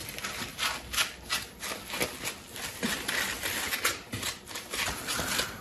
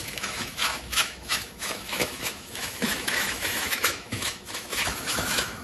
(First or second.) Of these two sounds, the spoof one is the second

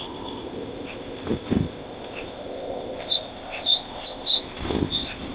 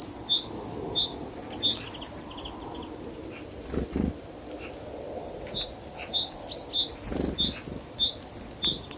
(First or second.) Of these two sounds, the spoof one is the first